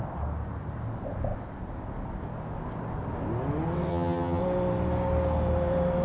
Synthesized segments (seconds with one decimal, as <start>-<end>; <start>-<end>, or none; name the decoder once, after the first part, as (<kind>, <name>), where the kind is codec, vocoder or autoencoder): 3.9-4.4 (vocoder, HiFi-GAN)